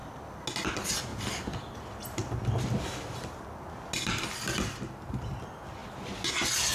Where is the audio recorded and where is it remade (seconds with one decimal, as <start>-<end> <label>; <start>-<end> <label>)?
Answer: 0.0-6.7 recorded

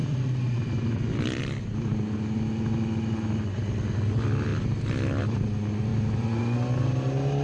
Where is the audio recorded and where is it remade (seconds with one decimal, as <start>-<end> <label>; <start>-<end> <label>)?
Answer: 0.0-1.4 remade; 1.4-4.5 recorded; 4.5-5.2 remade; 5.2-5.9 recorded; 5.9-6.4 remade; 6.4-7.4 recorded

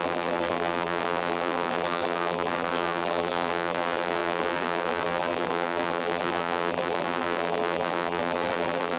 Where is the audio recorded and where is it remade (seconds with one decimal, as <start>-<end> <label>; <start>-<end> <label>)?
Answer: 0.0-9.0 remade

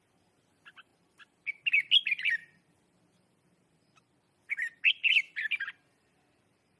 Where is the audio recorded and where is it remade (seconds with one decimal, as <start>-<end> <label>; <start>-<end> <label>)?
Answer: 0.0-0.9 remade; 0.9-2.0 recorded; 2.0-2.4 remade; 2.4-6.8 recorded

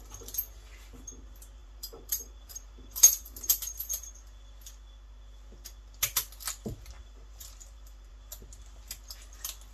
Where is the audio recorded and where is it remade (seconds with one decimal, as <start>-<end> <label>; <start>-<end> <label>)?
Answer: 0.0-1.6 recorded; 1.6-4.1 remade; 4.1-7.0 recorded; 7.0-8.1 remade; 8.1-9.7 recorded

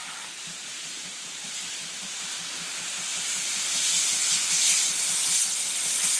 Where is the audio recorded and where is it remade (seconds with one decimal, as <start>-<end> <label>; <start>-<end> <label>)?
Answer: 0.0-2.4 remade; 2.4-6.2 recorded

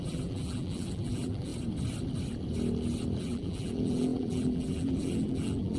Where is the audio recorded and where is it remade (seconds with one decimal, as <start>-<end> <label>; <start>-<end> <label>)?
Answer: 0.0-1.5 remade; 1.5-3.2 recorded; 3.2-5.8 remade

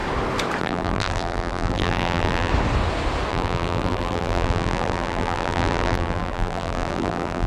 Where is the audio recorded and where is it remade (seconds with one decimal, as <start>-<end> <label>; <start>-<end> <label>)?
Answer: 0.0-0.6 recorded; 0.6-2.5 remade; 2.5-3.3 recorded; 3.3-7.5 remade